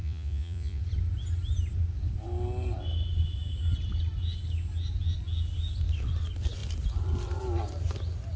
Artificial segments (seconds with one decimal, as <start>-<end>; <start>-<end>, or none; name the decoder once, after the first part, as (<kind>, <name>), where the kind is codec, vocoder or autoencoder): 0.0-0.8 (vocoder, Vocos)

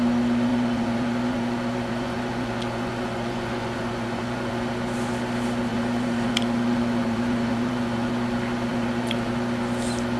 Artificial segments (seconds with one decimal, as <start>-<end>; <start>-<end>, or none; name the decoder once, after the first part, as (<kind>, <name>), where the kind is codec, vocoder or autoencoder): 0.5-4.6 (vocoder, Vocos); 5.7-8.1; 8.7-9.3